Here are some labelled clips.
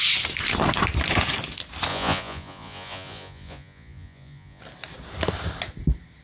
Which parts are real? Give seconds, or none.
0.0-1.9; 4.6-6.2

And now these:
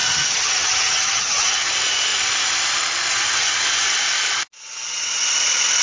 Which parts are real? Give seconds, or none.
1.7-5.8